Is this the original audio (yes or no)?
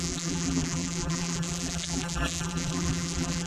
no